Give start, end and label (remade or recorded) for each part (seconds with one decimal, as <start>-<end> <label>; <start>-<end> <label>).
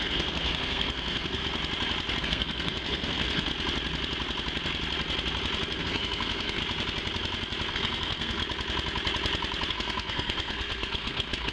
0.0-1.4 remade; 1.4-2.2 recorded; 2.2-3.5 remade; 3.5-5.8 recorded; 5.8-6.6 remade; 6.6-7.7 recorded; 7.7-8.4 remade; 8.4-9.7 recorded; 9.7-11.5 remade